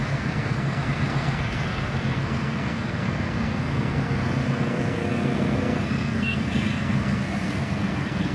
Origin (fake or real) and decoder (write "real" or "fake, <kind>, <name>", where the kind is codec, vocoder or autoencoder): fake, codec, SNAC